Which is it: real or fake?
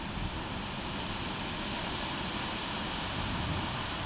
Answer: real